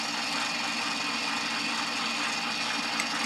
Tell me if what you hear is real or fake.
real